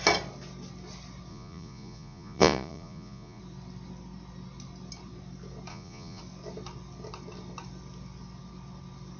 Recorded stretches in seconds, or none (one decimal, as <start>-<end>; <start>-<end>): 0.0-1.3; 3.4-5.7; 6.2-9.2